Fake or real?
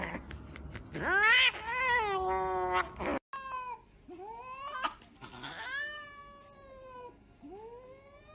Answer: real